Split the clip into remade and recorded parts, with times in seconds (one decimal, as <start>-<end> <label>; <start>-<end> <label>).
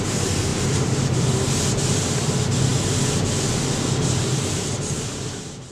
0.0-0.5 recorded; 0.5-1.6 remade; 1.6-5.7 recorded